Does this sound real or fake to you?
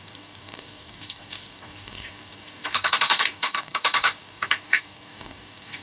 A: fake